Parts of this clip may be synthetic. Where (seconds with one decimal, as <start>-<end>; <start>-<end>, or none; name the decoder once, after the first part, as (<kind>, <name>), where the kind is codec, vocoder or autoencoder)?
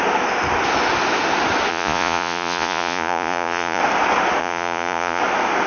1.7-3.8 (vocoder, Vocos); 4.4-5.2